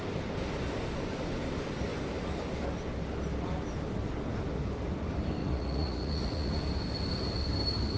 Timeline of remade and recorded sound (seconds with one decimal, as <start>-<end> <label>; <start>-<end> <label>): 0.0-5.4 recorded; 5.4-6.6 remade; 6.6-8.0 recorded

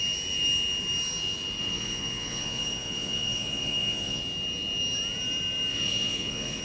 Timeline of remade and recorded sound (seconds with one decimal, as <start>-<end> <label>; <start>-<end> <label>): 0.0-1.6 recorded; 1.6-4.2 remade; 4.2-5.7 recorded; 5.7-6.6 remade

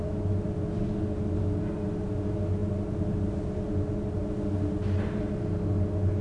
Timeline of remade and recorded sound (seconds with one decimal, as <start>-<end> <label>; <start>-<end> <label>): 0.0-6.2 recorded

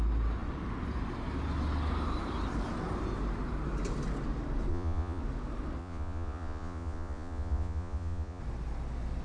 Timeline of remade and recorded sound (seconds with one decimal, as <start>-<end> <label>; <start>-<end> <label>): 0.0-4.7 recorded; 4.7-5.2 remade; 5.2-5.8 recorded; 5.8-8.4 remade; 8.4-9.2 recorded

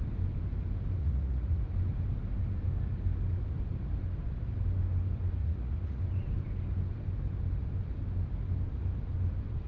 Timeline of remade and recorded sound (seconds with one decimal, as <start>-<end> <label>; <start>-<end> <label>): 0.0-1.0 recorded; 1.0-1.6 remade; 1.6-5.4 recorded; 5.4-6.0 remade; 6.0-9.7 recorded

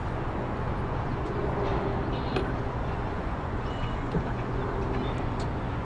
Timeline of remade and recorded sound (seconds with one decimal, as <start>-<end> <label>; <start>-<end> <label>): 0.0-1.7 remade; 1.7-2.6 recorded; 2.6-4.6 remade; 4.6-5.2 recorded; 5.2-5.8 remade

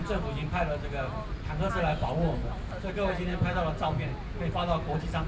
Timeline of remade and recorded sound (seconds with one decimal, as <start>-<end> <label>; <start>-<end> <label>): 0.0-5.3 recorded

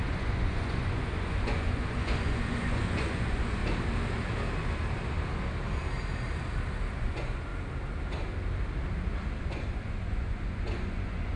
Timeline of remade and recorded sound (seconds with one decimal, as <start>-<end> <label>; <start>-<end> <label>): 0.0-3.6 remade; 3.6-6.9 recorded; 6.9-7.5 remade; 7.5-9.4 recorded; 9.4-11.4 remade